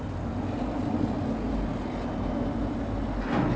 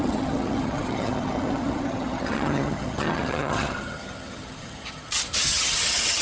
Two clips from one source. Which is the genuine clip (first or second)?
first